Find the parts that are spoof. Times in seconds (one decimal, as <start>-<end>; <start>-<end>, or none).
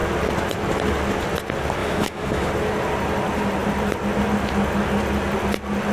1.8-2.5